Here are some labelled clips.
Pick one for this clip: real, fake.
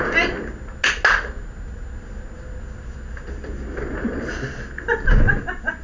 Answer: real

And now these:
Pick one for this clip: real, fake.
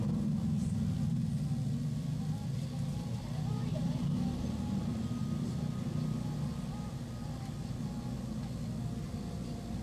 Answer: real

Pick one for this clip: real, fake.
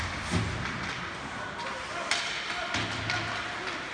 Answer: real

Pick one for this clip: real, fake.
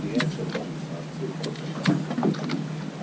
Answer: real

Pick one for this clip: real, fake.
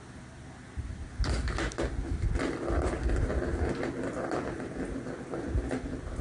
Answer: real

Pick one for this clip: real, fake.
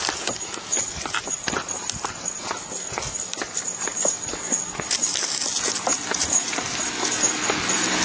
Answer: real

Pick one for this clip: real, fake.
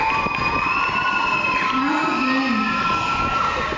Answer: real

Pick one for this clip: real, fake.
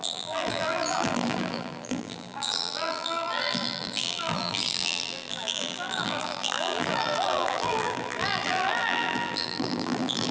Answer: fake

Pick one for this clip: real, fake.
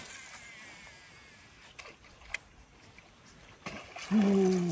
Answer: real